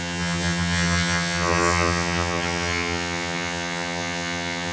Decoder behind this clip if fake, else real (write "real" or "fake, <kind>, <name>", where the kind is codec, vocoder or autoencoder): fake, vocoder, HiFi-GAN